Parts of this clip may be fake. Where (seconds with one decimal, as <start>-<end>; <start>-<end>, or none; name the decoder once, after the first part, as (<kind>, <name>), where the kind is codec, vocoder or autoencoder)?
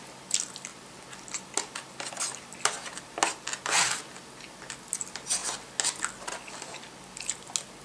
none